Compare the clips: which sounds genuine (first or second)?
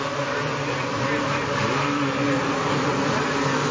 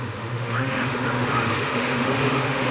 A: first